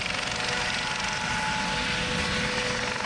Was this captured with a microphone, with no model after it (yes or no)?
yes